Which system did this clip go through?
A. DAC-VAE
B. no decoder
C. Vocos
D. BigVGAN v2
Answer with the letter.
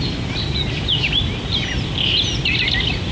B